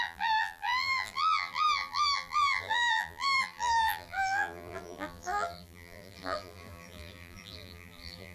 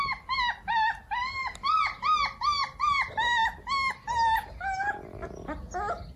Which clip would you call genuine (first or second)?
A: second